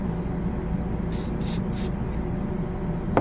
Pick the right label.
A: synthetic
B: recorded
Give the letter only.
B